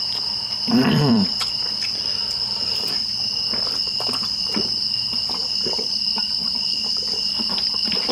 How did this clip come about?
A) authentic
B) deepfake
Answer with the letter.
B